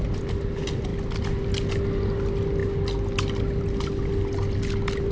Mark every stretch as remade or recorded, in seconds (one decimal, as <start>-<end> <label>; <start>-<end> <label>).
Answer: 0.0-5.1 recorded